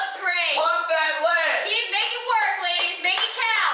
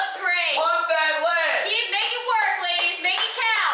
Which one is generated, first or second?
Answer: first